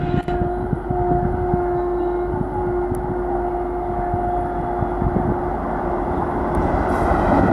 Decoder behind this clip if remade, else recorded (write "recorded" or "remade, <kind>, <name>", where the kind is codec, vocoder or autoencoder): recorded